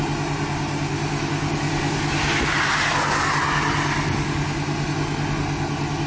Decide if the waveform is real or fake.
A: real